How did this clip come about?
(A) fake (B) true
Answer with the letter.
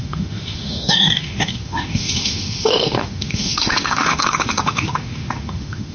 A